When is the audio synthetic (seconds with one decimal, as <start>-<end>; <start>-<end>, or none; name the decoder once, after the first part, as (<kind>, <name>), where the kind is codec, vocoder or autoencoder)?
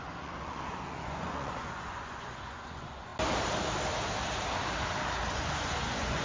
0.0-3.1 (vocoder, Vocos); 5.3-6.2